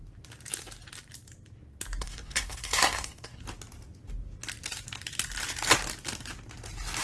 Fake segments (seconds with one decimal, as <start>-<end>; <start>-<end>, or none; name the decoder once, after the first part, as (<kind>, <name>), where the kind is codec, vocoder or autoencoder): 2.0-3.4 (codec, SNAC)